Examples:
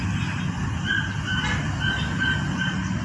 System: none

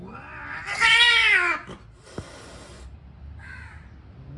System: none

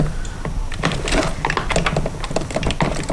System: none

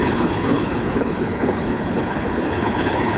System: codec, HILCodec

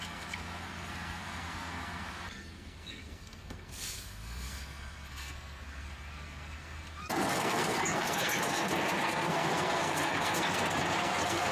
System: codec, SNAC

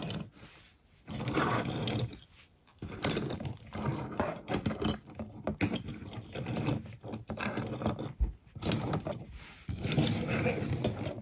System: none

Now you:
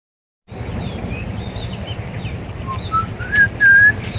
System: none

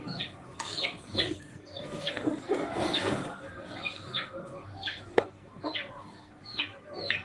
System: codec, SNAC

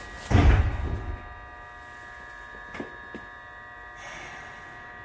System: none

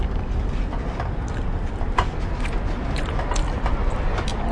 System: none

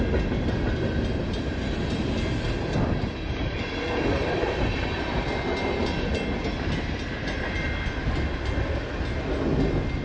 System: none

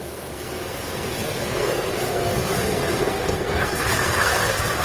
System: codec, SNAC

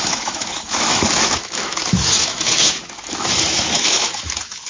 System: autoencoder, DAC-VAE